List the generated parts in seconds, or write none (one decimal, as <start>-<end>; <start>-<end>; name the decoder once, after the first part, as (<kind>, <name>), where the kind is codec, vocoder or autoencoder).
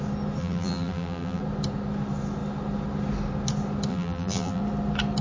0.4-1.4 (vocoder, BigVGAN v2); 3.9-4.6